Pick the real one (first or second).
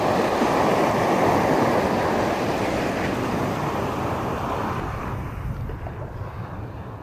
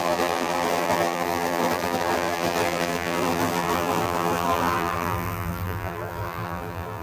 first